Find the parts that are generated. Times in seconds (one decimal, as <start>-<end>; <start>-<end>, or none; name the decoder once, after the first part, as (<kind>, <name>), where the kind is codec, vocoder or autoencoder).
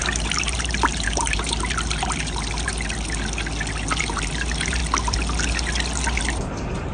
0.0-2.7 (vocoder, BigVGAN v2); 4.0-4.8; 6.2-6.9